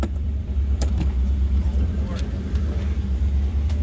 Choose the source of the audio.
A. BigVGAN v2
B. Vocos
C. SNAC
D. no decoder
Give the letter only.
A